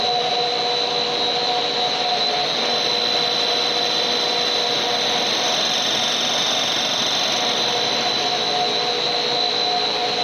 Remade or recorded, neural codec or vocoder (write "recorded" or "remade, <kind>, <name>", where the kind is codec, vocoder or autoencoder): recorded